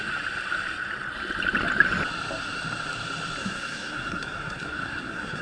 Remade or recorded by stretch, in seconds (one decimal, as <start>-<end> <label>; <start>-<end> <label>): 0.0-3.4 recorded; 3.4-5.4 remade